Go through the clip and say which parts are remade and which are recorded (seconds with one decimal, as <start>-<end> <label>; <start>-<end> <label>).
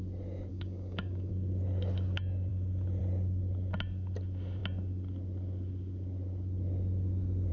0.0-0.5 recorded; 0.5-1.3 remade; 1.3-7.5 recorded